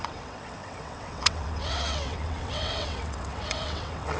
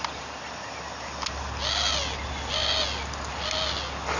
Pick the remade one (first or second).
first